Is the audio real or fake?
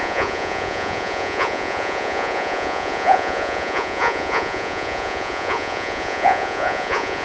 fake